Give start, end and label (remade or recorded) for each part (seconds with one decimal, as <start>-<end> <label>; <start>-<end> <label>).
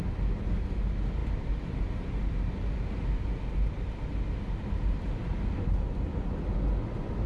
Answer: 0.0-7.3 recorded